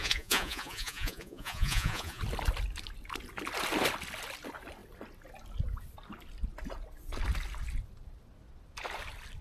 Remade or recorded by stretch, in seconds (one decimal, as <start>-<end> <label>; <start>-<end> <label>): 0.0-2.2 remade; 2.2-9.4 recorded